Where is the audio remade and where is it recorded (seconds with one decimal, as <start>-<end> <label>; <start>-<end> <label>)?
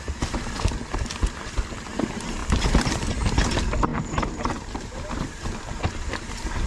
0.0-2.4 recorded; 2.4-3.2 remade; 3.2-3.9 recorded; 3.9-6.3 remade; 6.3-6.7 recorded